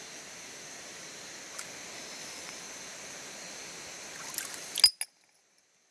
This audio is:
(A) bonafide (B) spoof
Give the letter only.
A